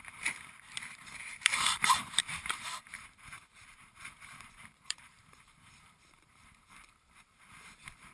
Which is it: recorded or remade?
remade